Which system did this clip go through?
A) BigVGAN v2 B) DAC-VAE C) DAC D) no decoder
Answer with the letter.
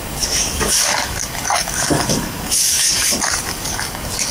C